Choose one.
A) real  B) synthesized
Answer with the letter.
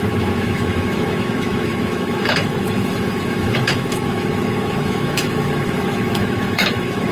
B